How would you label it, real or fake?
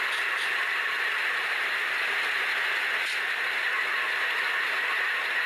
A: real